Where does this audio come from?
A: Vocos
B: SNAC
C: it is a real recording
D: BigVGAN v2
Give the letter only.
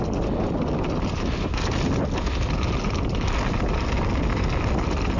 C